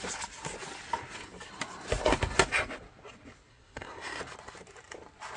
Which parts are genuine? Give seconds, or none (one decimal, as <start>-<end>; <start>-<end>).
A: 0.0-3.5; 4.2-5.4